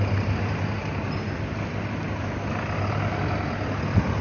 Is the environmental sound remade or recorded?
recorded